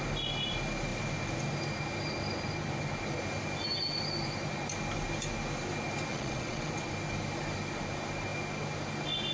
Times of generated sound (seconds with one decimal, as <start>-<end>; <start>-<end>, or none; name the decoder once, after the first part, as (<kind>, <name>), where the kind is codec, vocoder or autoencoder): 6.1-6.7 (vocoder, WaveNeXt)